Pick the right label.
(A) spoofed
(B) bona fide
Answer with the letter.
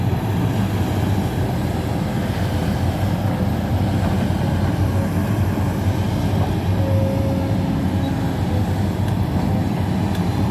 B